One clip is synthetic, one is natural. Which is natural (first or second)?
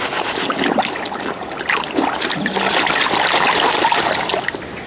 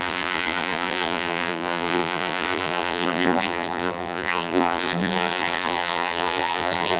first